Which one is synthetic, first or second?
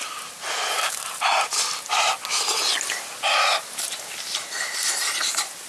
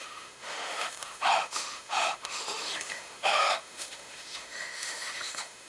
second